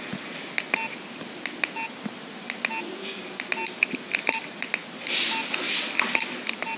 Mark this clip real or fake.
real